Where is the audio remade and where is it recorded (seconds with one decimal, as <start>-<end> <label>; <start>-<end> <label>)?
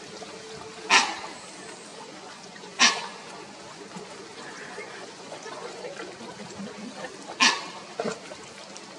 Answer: 0.0-1.9 recorded; 1.9-5.8 remade; 5.8-9.0 recorded